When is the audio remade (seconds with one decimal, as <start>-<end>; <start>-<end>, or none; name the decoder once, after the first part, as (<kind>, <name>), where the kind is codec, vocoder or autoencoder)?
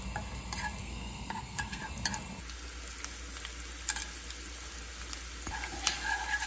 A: 0.8-1.8 (codec, SNAC)